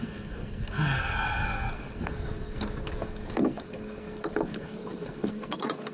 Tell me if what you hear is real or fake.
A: fake